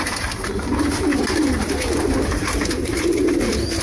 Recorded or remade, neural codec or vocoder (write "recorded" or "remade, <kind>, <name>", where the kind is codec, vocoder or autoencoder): remade, vocoder, BigVGAN v2